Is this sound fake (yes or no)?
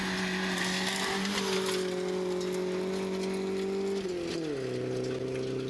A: no